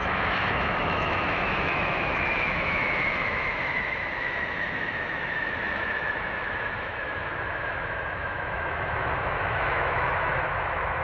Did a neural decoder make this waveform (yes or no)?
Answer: yes